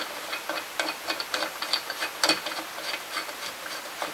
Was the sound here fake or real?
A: real